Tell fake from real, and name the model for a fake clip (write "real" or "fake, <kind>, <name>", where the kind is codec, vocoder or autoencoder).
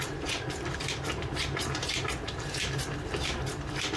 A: fake, vocoder, BigVGAN v2